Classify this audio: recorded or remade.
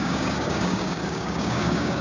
remade